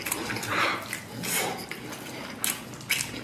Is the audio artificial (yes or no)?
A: no